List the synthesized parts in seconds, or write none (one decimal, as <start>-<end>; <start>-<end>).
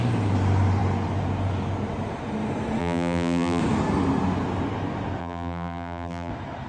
2.8-3.6; 5.2-6.3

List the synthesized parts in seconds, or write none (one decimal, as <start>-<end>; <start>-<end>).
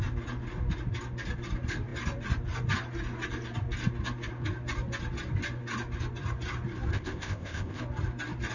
6.9-7.8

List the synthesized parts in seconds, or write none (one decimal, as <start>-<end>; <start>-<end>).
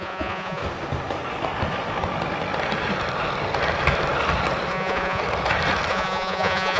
0.0-0.6; 4.7-5.2; 5.9-6.8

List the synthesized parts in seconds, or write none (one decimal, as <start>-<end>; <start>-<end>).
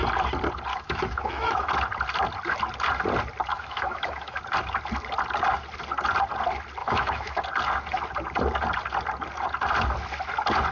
0.7-1.7; 3.5-4.4; 6.8-7.4